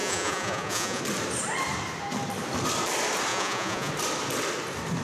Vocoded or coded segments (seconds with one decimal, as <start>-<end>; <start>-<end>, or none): 0.0-1.0; 3.3-3.9